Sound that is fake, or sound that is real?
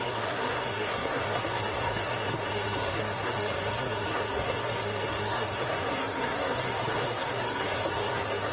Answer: fake